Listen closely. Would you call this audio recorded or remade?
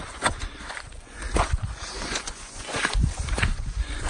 remade